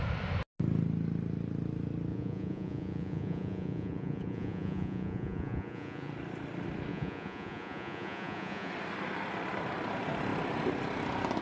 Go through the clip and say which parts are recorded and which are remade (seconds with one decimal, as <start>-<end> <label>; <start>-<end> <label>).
0.0-2.1 recorded; 2.1-6.1 remade; 6.1-6.9 recorded; 6.9-8.7 remade; 8.7-11.4 recorded